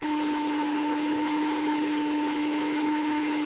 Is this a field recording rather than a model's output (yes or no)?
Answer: no